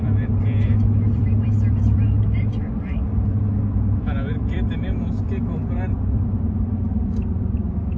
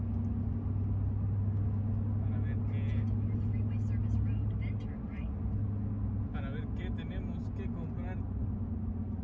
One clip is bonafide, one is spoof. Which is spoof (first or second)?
first